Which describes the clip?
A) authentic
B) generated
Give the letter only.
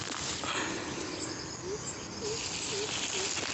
A